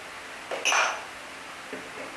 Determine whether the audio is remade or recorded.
recorded